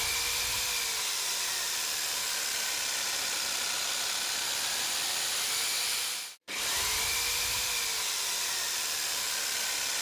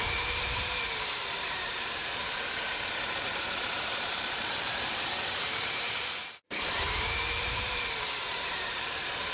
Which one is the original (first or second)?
first